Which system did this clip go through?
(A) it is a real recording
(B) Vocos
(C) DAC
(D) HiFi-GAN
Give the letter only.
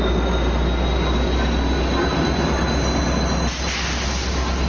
A